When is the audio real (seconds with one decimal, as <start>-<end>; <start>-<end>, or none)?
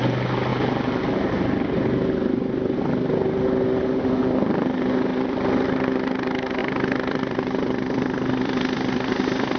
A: 0.0-5.1; 5.7-6.6